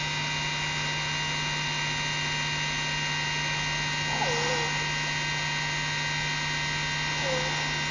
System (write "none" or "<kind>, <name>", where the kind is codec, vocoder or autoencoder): none